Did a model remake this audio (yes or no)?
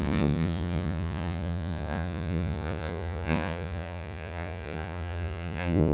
yes